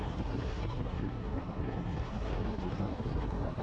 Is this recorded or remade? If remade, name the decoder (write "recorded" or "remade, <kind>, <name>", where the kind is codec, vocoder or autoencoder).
remade, codec, SNAC